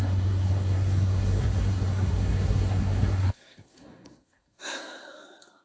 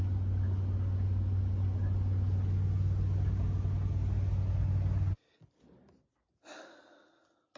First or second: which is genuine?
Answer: second